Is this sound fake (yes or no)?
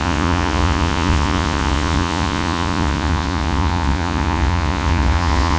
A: yes